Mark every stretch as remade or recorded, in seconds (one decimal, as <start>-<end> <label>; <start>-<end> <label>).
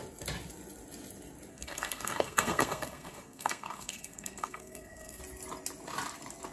0.0-1.5 recorded; 1.5-5.2 remade; 5.2-6.5 recorded